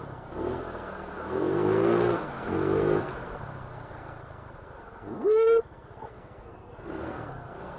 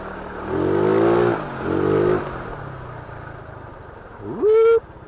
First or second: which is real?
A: second